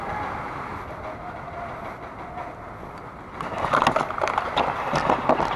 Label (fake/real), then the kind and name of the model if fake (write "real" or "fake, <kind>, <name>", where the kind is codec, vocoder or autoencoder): real